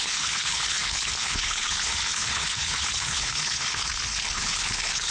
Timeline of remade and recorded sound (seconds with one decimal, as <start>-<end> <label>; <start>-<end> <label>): 0.0-5.1 remade